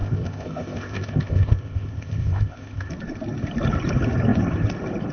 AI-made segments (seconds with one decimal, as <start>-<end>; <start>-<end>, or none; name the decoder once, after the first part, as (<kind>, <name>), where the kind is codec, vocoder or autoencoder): 0.0-2.9 (codec, ZipCodec)